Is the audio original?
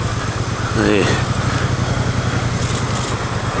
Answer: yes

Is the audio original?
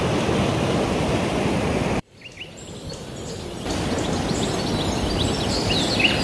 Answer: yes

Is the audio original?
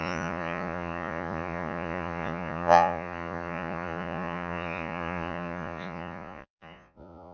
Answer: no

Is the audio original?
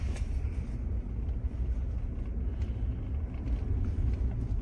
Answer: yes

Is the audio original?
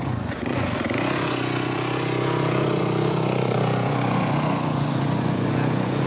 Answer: no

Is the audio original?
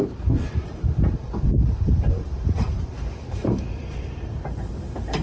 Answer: no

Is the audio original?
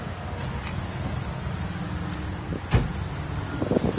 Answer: yes